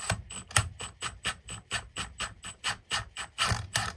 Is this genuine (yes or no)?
no